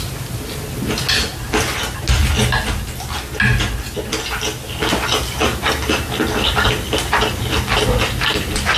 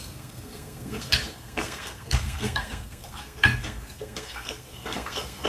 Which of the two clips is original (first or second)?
first